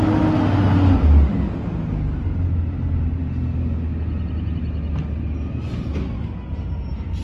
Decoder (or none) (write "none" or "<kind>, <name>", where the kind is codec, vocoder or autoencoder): none